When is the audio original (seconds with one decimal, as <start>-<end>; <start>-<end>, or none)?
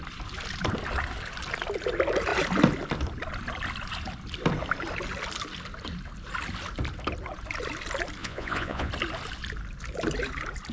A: 0.0-8.2; 8.9-10.7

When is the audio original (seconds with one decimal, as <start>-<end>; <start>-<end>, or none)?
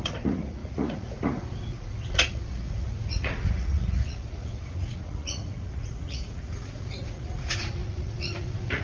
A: none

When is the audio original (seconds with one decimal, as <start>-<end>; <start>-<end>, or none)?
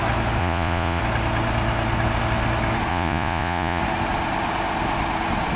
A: 0.0-0.4; 1.0-2.9; 3.8-5.6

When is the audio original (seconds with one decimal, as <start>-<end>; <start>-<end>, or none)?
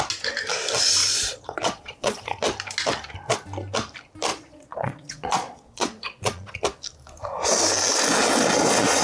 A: 0.0-1.0; 2.4-4.3; 6.6-9.0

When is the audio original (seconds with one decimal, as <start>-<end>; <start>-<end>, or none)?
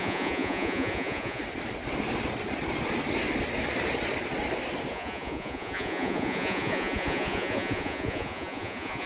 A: 1.4-4.9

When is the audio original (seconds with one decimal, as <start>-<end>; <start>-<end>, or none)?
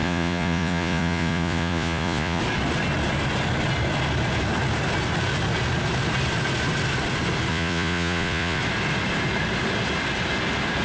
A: 2.4-7.5; 8.6-10.8